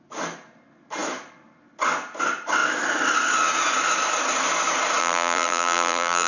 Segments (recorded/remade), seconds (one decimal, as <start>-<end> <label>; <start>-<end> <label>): 0.0-5.0 recorded; 5.0-6.3 remade